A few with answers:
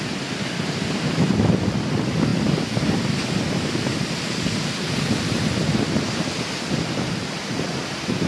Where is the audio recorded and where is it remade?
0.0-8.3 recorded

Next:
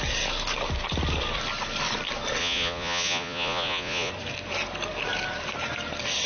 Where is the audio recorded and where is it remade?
0.0-2.4 recorded; 2.4-4.1 remade; 4.1-6.3 recorded